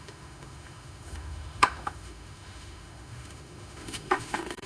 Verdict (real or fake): fake